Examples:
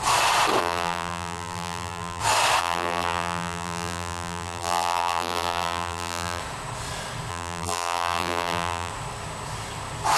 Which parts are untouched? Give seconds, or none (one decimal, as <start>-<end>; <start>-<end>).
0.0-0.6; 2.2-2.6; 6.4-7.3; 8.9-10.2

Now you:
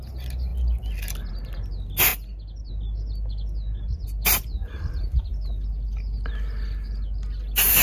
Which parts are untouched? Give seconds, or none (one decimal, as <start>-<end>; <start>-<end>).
0.0-7.8

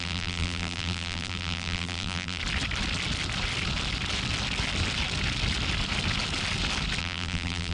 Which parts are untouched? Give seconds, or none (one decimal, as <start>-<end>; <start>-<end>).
2.4-7.0